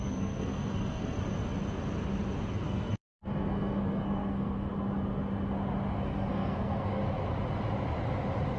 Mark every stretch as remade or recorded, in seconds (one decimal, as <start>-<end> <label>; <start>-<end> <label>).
0.0-1.2 remade; 1.2-2.5 recorded; 2.5-4.7 remade; 4.7-5.9 recorded; 5.9-7.0 remade; 7.0-8.6 recorded